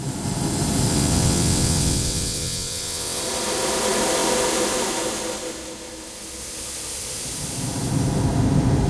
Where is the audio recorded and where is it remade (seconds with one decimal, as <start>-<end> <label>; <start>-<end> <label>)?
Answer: 0.0-0.9 recorded; 0.9-3.2 remade; 3.2-8.9 recorded